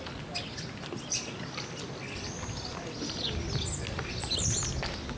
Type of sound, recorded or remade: recorded